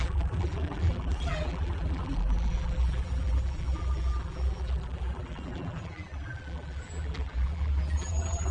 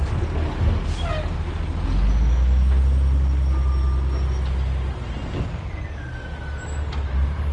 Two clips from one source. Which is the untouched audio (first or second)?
second